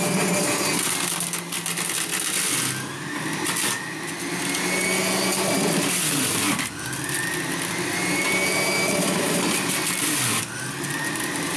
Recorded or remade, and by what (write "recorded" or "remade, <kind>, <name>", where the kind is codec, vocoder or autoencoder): recorded